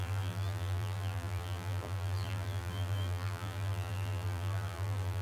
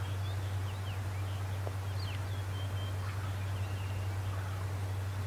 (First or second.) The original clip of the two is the second